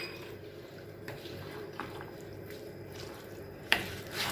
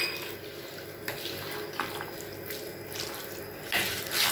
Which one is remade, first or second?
first